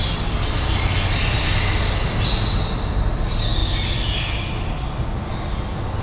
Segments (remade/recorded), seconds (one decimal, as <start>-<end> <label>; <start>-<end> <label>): 0.0-6.0 recorded